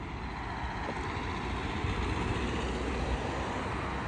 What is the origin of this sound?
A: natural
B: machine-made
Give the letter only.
A